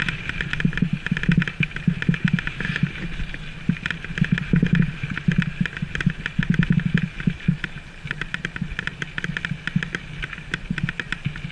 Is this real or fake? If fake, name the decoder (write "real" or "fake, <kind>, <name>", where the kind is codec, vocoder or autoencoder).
real